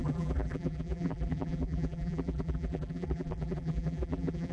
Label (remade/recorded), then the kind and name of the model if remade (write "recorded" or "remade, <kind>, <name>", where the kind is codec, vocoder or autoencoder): remade, vocoder, BigVGAN v2